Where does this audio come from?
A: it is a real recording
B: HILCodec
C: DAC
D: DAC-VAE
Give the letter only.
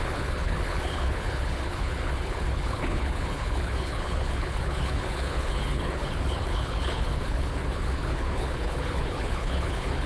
B